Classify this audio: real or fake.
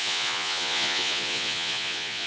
fake